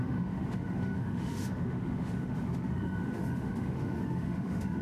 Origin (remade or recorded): remade